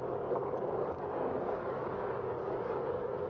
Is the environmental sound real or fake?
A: fake